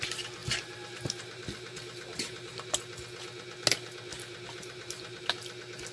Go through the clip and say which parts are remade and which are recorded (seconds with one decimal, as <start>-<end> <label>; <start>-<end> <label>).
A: 0.0-0.4 recorded; 0.4-2.7 remade; 2.7-4.1 recorded; 4.1-5.2 remade; 5.2-5.9 recorded